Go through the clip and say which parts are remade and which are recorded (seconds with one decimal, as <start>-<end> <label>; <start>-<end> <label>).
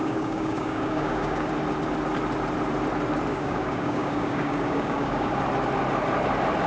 0.0-1.5 remade; 1.5-3.3 recorded; 3.3-5.3 remade; 5.3-6.7 recorded